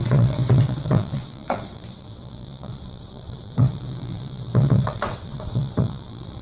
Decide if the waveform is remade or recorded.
remade